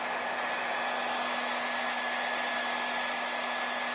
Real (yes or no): yes